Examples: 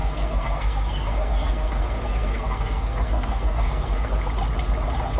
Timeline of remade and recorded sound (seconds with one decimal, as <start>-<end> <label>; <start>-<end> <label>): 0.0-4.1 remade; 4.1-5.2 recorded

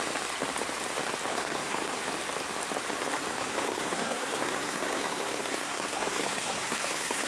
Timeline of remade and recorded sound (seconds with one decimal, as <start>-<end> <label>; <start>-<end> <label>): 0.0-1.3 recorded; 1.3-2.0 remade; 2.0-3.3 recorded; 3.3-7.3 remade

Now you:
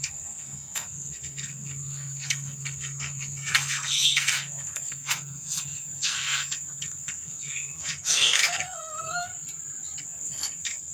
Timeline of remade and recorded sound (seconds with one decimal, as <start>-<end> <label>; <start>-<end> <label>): 0.0-9.3 remade; 9.3-10.0 recorded; 10.0-10.9 remade

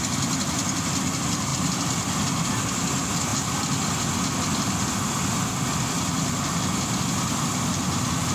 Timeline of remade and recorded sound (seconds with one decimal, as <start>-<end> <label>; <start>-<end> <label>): 0.0-8.3 recorded